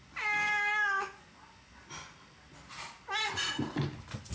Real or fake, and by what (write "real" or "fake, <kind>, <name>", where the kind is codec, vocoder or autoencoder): real